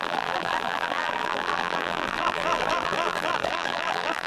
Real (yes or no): no